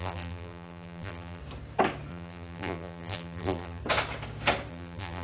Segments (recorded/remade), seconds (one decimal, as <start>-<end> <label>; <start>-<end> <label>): 0.0-1.4 remade; 1.4-2.1 recorded; 2.1-3.8 remade; 3.8-4.7 recorded; 4.7-5.2 remade